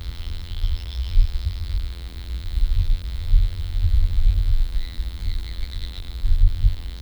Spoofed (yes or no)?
yes